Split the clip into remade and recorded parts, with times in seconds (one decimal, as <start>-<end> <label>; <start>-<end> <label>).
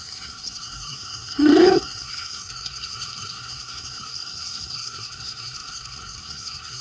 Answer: 0.0-6.8 remade